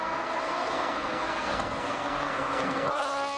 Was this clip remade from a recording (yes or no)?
yes